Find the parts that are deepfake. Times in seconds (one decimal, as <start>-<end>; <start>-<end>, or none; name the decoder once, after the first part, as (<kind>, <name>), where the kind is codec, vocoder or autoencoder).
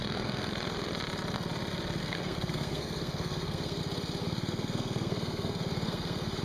0.0-0.5 (codec, SNAC); 2.0-3.8; 4.2-6.4